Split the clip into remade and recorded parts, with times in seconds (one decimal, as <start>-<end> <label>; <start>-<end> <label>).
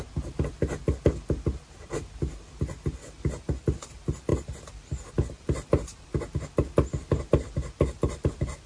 0.0-8.7 recorded